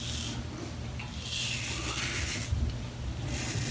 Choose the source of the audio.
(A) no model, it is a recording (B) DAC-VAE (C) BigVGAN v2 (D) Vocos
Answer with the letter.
A